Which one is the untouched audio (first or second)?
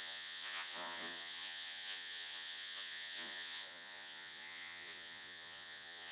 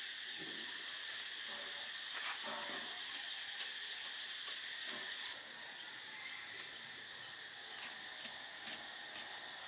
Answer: second